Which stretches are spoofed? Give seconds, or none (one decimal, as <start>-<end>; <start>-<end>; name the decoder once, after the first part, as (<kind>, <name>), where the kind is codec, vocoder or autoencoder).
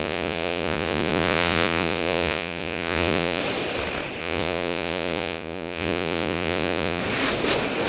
0.0-3.4 (vocoder, Vocos); 4.2-7.0